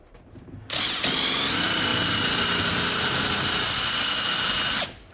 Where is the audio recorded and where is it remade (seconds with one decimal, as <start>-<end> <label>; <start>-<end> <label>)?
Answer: 0.0-5.1 recorded